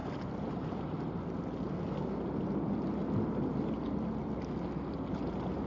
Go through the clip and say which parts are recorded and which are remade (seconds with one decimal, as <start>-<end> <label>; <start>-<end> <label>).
0.0-5.7 recorded